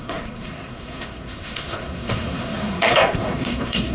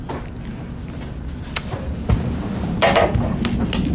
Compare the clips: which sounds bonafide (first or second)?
second